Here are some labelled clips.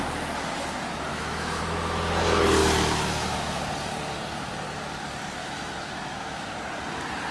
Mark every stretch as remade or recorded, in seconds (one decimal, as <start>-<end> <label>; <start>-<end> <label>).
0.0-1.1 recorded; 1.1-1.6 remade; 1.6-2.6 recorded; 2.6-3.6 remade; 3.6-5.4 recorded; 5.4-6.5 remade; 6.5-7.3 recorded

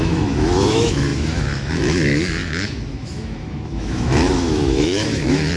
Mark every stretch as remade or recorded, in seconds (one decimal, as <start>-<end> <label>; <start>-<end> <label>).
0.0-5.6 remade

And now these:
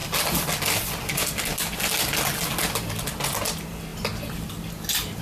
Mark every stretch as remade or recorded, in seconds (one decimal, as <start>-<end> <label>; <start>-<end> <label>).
0.0-5.2 recorded